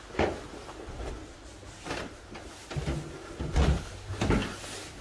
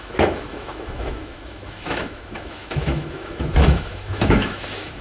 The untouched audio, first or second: first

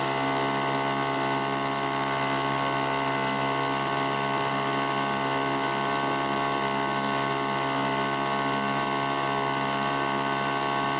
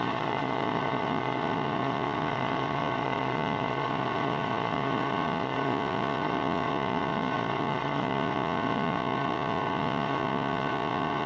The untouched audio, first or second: first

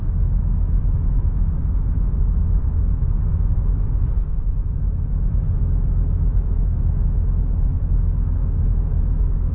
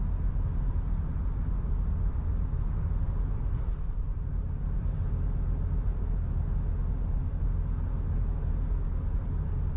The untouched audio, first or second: second